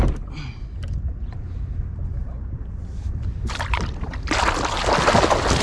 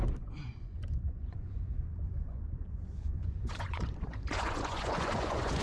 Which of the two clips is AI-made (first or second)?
second